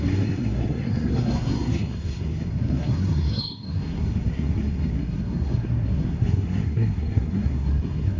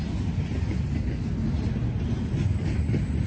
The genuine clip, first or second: second